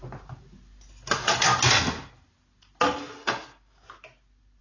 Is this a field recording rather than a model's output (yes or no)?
yes